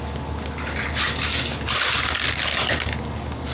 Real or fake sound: real